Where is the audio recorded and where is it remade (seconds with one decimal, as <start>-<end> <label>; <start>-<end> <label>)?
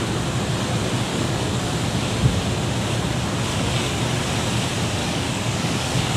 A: 0.0-1.1 recorded; 1.1-1.6 remade; 1.6-3.5 recorded; 3.5-4.0 remade; 4.0-5.0 recorded; 5.0-6.2 remade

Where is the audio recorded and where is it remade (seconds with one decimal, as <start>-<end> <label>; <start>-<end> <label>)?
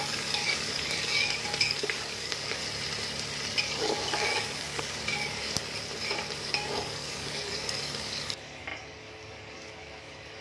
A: 0.0-2.6 remade; 2.6-3.6 recorded; 3.6-5.6 remade; 5.6-6.4 recorded; 6.4-10.4 remade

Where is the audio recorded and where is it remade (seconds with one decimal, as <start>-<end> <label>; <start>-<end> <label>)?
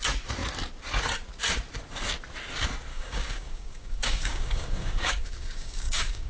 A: 0.0-2.9 recorded; 2.9-6.3 remade